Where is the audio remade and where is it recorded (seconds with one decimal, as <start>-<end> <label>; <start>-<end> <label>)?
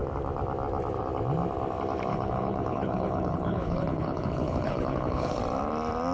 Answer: 0.0-2.1 recorded; 2.1-5.4 remade; 5.4-6.1 recorded